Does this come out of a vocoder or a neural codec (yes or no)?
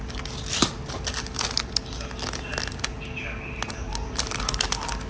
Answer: no